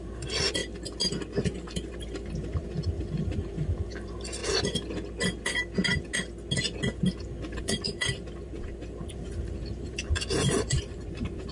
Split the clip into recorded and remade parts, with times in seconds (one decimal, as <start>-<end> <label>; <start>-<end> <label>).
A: 0.0-0.6 remade; 0.6-1.4 recorded; 1.4-4.4 remade; 4.4-7.6 recorded; 7.6-11.5 remade